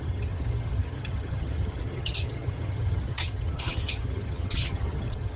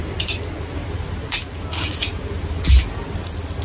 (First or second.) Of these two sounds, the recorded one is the second